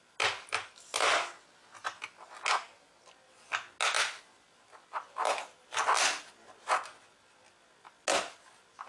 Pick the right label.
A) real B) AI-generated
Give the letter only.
A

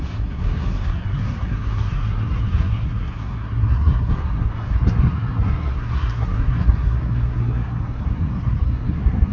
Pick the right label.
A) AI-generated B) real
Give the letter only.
A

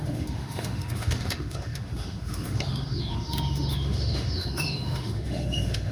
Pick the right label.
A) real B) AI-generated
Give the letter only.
B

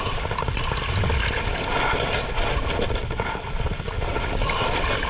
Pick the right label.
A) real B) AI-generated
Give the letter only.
A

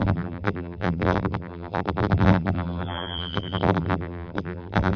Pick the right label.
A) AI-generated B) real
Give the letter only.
A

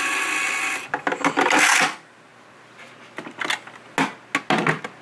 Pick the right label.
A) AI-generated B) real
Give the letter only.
B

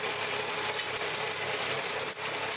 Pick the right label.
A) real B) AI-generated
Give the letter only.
A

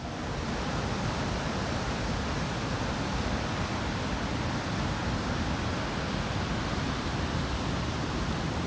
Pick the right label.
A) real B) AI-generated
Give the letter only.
A